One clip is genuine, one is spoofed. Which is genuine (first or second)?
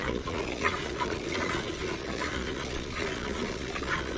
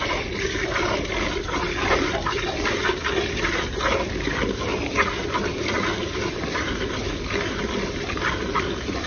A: second